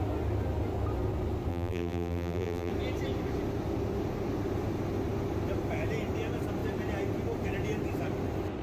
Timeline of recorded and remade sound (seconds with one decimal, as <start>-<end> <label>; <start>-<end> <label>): 0.0-1.5 recorded; 1.5-2.7 remade; 2.7-8.6 recorded